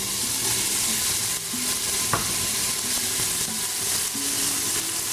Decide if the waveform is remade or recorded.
recorded